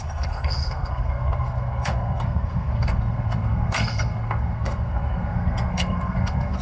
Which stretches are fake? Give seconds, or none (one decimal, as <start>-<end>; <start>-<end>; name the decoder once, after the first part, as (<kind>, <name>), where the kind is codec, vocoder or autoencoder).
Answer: 0.0-6.6 (codec, SNAC)